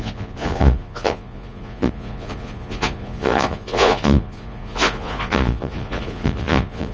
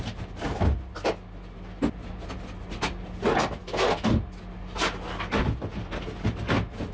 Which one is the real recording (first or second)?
second